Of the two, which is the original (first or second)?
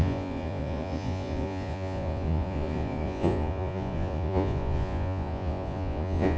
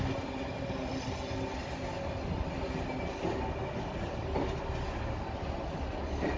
second